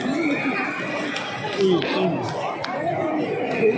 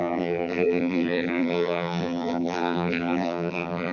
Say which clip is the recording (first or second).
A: first